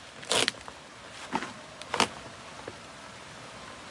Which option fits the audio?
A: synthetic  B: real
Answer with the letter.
B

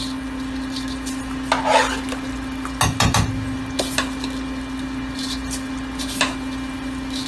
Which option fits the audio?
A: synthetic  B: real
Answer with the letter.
B